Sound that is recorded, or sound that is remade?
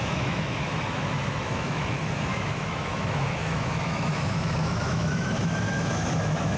remade